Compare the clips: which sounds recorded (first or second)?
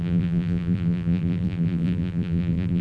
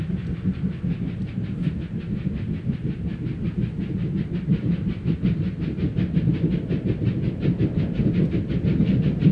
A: second